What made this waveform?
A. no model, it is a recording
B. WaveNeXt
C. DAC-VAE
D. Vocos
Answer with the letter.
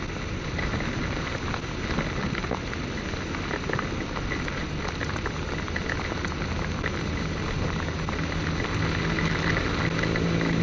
A